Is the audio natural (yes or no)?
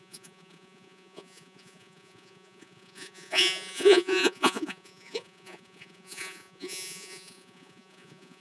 no